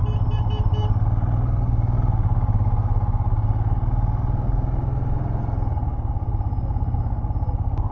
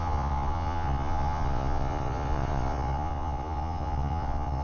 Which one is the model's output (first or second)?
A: second